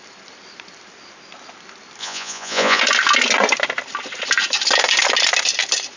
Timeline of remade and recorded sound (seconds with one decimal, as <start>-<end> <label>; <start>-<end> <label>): 0.0-2.0 recorded; 2.0-2.8 remade; 2.8-6.0 recorded